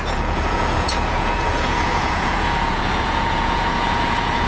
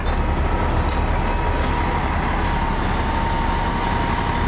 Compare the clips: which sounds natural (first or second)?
second